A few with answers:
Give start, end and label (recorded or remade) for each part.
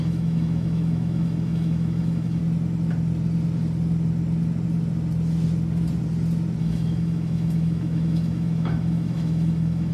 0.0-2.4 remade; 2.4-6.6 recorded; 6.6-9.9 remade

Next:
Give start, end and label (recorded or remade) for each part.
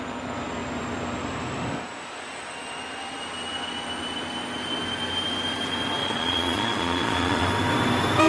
0.0-6.0 recorded; 6.0-7.5 remade; 7.5-8.3 recorded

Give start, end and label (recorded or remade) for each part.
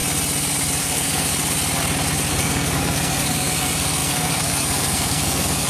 0.0-0.8 recorded; 0.8-1.3 remade; 1.3-2.3 recorded; 2.3-5.7 remade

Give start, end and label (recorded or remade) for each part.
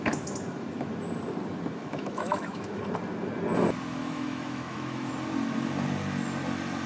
0.0-1.7 recorded; 1.7-2.8 remade; 2.8-4.0 recorded; 4.0-5.1 remade; 5.1-6.9 recorded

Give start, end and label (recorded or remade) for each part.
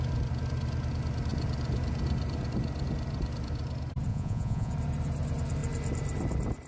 0.0-4.1 recorded; 4.1-4.7 remade; 4.7-6.7 recorded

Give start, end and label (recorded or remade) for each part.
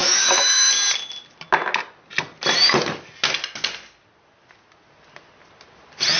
0.0-0.7 remade; 0.7-6.2 recorded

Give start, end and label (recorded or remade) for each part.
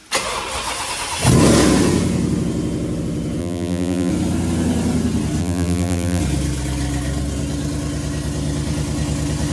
0.0-3.4 recorded; 3.4-4.1 remade; 4.1-5.4 recorded; 5.4-6.2 remade; 6.2-9.5 recorded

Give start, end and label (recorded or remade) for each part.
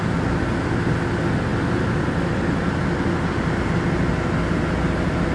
0.0-5.3 recorded